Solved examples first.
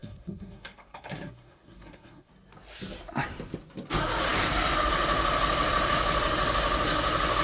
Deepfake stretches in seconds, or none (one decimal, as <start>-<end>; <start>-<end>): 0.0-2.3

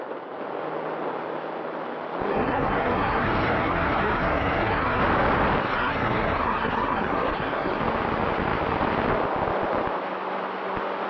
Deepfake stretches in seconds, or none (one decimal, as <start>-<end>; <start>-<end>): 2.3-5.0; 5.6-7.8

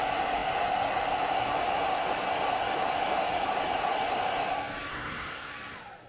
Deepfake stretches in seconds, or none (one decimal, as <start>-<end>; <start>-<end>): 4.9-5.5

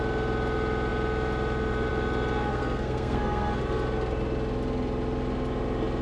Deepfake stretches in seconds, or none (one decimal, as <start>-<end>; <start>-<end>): 2.5-3.5

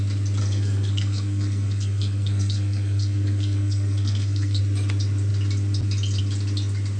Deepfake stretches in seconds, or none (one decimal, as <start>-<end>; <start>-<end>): 0.4-4.6